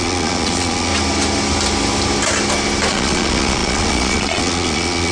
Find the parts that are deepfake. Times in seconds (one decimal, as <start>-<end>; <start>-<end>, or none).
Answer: 0.0-0.9; 2.9-5.1